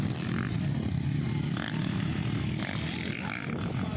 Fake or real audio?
real